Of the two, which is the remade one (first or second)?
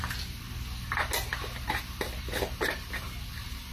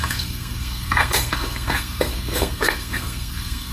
second